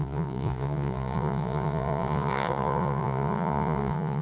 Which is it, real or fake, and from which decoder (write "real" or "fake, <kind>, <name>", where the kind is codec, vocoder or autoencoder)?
fake, vocoder, Vocos